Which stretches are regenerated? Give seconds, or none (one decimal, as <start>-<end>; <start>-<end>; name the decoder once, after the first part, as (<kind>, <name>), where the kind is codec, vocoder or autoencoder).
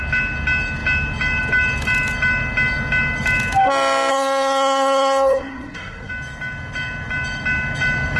4.1-6.1 (codec, SNAC)